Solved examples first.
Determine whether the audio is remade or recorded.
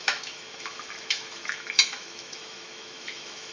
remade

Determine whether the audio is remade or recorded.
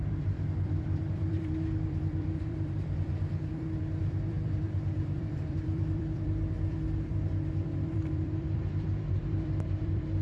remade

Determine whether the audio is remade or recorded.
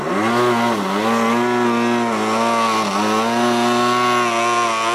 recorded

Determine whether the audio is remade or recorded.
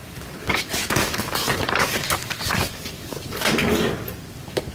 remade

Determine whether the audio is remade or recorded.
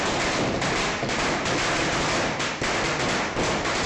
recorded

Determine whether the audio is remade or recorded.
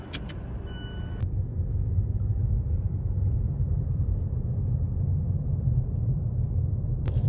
remade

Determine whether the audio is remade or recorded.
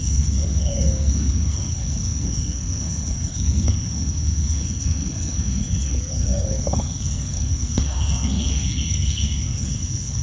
remade